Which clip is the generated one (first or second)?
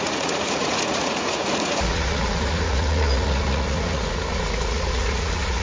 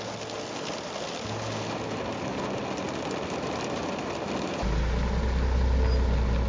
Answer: first